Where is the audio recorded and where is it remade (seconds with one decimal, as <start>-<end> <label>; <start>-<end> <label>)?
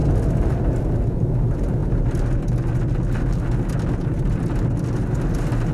0.0-5.7 recorded